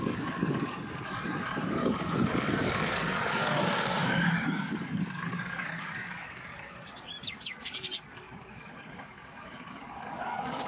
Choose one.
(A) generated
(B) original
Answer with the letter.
A